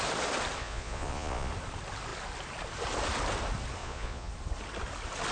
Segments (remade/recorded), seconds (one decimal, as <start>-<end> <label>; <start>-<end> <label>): 0.0-0.6 recorded; 0.6-1.5 remade; 1.5-3.8 recorded; 3.8-4.3 remade; 4.3-5.3 recorded